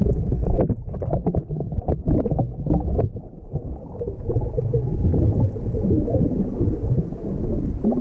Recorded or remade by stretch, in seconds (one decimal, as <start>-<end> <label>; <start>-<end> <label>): 0.0-8.0 recorded